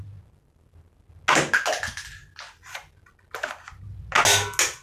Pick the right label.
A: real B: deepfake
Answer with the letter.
A